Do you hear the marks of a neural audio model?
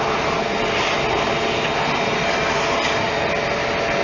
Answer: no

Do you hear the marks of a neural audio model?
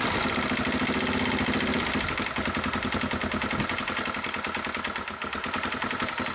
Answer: no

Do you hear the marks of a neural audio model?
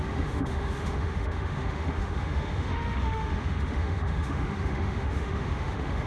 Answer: yes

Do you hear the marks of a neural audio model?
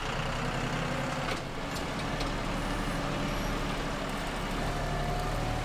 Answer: no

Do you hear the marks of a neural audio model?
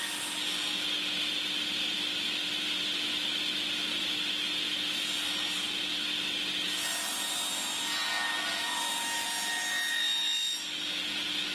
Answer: no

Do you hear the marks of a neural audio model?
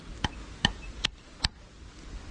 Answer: no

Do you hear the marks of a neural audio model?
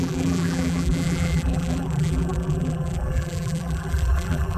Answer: yes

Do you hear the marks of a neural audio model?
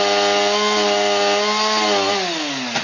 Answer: no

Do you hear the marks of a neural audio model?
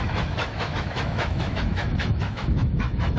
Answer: yes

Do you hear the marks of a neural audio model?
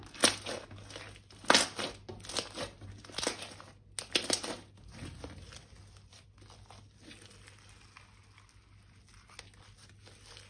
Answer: no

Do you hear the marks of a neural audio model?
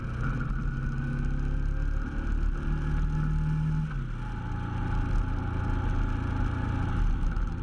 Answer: no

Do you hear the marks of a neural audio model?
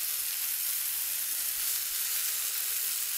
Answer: no